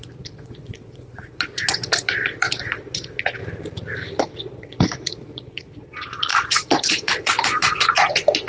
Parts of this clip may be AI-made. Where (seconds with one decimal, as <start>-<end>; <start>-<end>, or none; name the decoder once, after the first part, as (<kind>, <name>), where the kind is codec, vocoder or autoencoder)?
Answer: 0.0-3.4 (vocoder, Vocos); 4.2-8.5